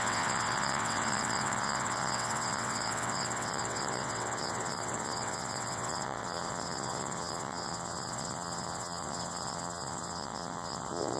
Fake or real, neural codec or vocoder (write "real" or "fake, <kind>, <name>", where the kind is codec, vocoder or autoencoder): fake, vocoder, WaveNeXt